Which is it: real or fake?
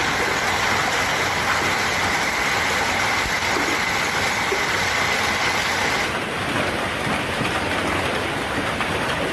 real